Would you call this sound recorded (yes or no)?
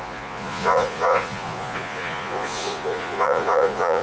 no